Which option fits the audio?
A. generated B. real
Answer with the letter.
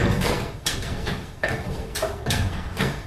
A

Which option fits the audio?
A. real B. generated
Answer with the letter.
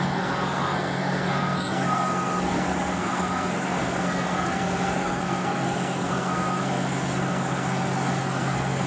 B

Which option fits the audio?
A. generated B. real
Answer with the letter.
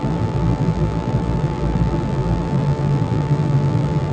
A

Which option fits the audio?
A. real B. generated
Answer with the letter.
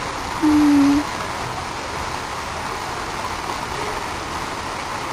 A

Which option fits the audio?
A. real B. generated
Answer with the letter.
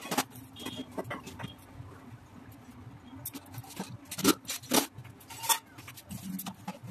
A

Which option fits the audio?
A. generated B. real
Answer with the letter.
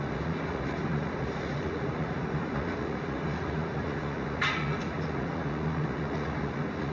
A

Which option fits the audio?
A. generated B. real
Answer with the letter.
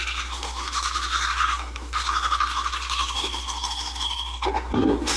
A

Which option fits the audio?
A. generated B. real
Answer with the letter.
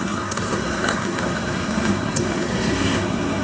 A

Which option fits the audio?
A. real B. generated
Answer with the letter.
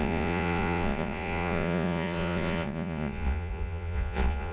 B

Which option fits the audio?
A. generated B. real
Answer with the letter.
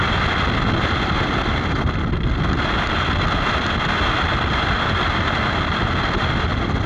B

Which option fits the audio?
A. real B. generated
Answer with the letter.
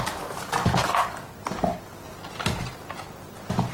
A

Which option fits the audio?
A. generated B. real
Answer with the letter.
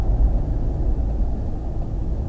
B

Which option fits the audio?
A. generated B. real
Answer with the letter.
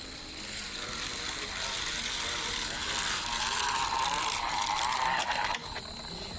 B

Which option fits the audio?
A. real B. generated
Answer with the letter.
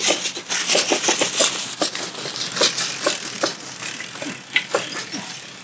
A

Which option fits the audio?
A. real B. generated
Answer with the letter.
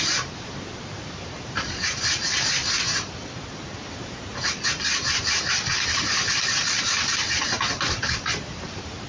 B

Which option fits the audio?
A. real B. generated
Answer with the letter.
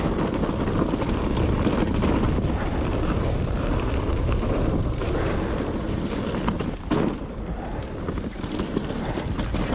A